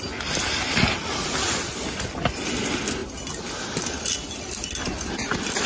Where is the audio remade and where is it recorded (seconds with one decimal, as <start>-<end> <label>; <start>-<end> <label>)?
0.0-5.7 recorded